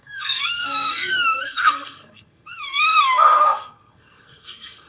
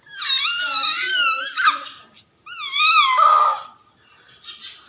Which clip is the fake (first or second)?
first